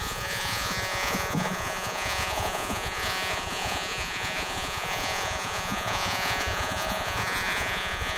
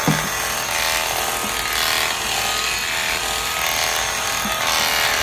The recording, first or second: second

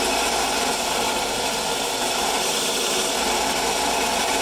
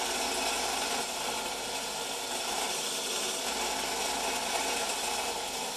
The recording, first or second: second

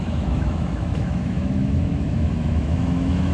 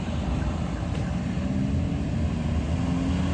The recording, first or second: second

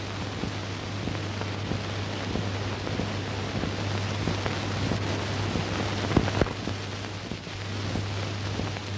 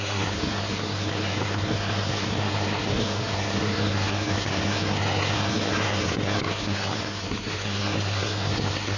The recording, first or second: first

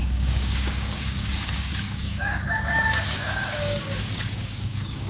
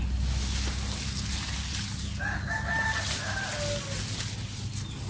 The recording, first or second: second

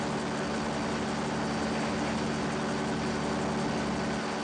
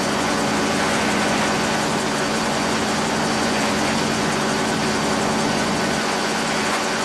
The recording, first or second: first